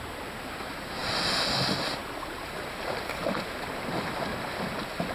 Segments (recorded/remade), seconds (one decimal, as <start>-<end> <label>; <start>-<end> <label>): 0.0-5.1 recorded